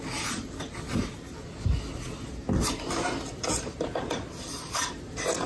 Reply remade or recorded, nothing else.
recorded